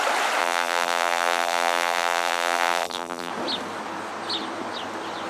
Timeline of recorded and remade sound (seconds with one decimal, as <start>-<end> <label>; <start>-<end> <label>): 0.0-0.4 recorded; 0.4-3.3 remade; 3.3-5.3 recorded